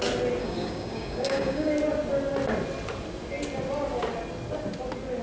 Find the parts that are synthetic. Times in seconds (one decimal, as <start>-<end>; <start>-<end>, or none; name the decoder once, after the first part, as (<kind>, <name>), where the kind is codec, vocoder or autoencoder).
0.4-1.7 (codec, DAC)

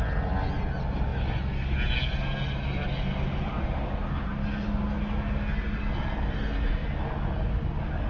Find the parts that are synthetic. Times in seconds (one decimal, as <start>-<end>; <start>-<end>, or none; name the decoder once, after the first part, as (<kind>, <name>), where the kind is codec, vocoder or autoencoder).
none

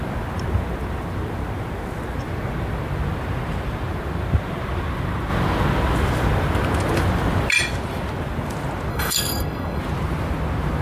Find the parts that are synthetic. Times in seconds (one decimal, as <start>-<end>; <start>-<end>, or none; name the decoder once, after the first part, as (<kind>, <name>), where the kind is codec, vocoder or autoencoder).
8.9-9.8 (codec, SNAC)

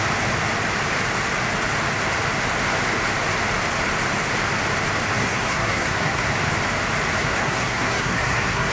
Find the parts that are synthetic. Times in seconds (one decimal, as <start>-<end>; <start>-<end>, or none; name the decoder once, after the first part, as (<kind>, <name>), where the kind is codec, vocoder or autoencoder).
5.2-6.3 (codec, SNAC); 7.2-8.7

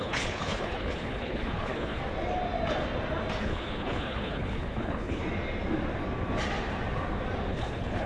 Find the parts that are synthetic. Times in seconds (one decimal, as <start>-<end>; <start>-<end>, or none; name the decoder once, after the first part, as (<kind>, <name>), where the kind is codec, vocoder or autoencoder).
0.0-2.0 (codec, HILCodec); 3.4-5.2; 7.5-8.1

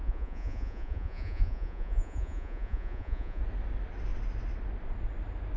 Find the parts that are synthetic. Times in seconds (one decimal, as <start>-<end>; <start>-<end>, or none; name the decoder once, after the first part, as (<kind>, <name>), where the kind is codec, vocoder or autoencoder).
0.0-3.4 (vocoder, Vocos)